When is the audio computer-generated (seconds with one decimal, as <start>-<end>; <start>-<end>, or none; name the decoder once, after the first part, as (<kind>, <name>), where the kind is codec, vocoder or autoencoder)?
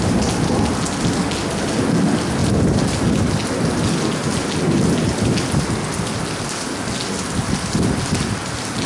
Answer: none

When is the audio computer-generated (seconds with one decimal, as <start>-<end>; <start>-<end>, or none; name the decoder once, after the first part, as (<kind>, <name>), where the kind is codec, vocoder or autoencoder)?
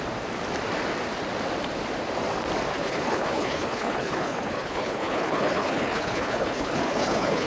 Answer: 2.7-7.5 (codec, HILCodec)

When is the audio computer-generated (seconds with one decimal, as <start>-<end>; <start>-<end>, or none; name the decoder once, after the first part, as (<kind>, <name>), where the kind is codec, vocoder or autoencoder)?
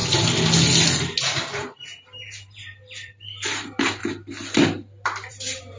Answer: 1.2-4.0 (vocoder, BigVGAN v2); 5.3-5.8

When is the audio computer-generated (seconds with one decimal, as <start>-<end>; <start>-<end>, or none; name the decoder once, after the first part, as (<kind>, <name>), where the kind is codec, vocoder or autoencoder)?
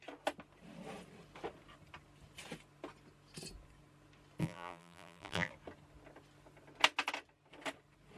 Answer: 4.4-5.5 (vocoder, BigVGAN v2)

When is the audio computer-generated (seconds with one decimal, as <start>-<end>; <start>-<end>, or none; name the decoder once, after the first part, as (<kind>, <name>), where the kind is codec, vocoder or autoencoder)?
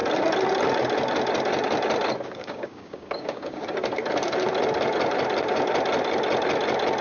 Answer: 2.4-3.6 (codec, DAC)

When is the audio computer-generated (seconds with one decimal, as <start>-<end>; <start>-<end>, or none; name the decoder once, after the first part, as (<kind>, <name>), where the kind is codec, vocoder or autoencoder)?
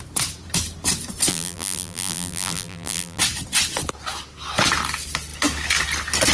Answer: 1.3-3.2 (vocoder, BigVGAN v2)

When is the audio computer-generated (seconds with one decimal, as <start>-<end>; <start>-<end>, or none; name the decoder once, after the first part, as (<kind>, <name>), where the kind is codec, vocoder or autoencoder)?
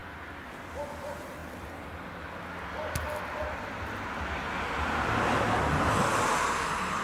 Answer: none